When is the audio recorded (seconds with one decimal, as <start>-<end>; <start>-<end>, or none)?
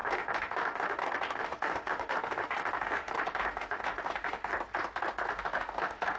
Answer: 4.5-5.3